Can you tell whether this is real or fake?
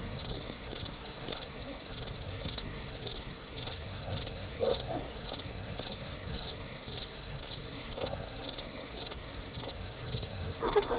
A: fake